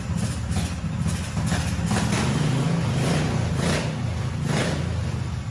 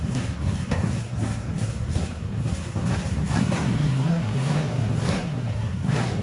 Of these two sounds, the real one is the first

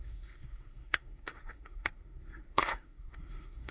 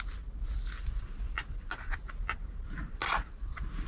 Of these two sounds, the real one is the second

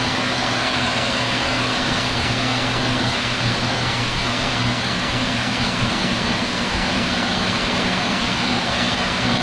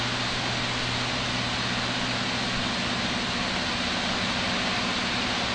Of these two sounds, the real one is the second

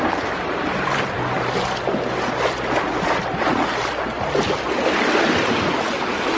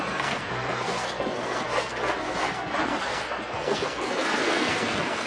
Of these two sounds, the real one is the first